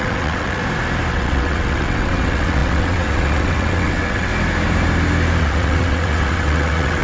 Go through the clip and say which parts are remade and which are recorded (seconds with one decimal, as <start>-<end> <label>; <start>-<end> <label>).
0.0-0.6 remade; 0.6-1.1 recorded; 1.1-4.3 remade; 4.3-5.4 recorded; 5.4-7.0 remade